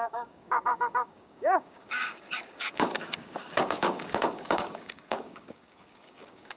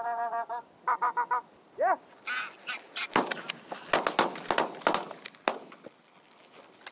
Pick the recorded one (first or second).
second